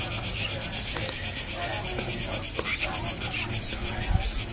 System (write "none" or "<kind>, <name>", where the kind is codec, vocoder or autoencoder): none